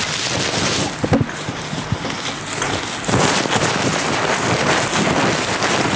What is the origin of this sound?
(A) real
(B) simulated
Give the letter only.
A